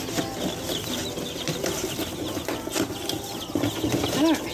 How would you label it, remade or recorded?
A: recorded